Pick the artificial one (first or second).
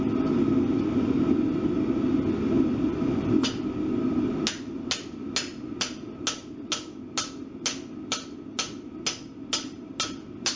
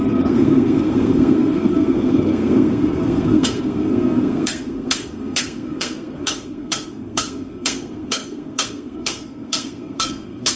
second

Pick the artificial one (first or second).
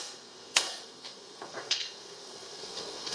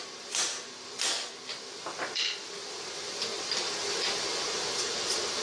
first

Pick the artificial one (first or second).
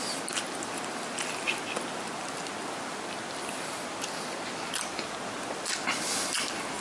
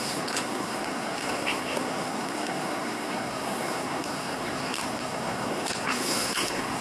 second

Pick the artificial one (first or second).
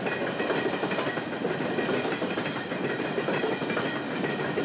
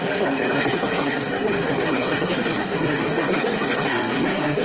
second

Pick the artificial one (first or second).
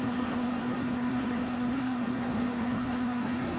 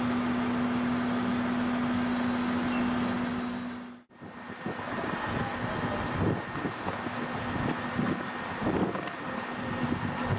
first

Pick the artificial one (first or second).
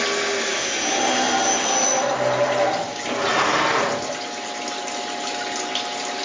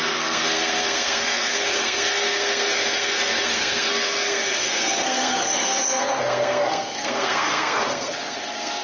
second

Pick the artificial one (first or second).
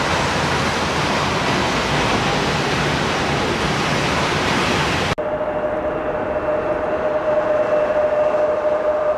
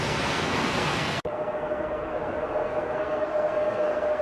second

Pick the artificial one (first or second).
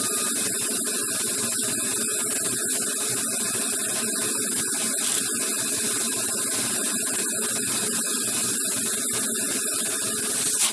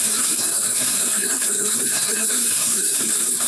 second